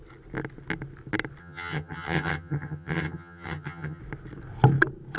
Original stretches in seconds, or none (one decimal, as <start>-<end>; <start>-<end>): 0.0-1.4; 4.0-5.2